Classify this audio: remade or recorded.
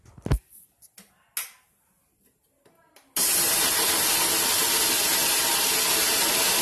recorded